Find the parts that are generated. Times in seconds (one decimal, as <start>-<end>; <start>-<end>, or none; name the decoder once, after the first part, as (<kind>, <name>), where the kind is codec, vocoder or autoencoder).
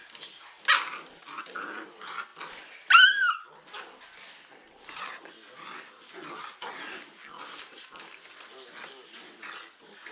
none